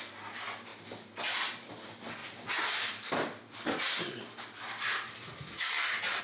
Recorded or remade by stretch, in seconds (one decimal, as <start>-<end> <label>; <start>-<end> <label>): 0.0-6.2 recorded